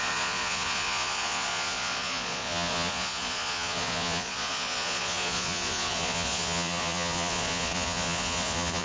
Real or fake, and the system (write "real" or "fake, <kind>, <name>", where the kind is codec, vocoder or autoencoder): fake, vocoder, Vocos